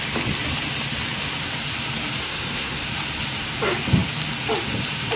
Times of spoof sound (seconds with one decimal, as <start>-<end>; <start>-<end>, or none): 2.2-2.8